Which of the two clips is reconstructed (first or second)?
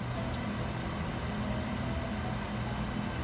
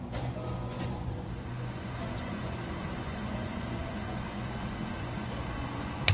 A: second